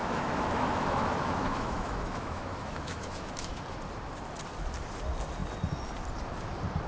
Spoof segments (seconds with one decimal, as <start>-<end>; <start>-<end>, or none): 0.0-3.6